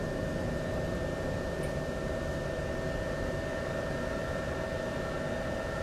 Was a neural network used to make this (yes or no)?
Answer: no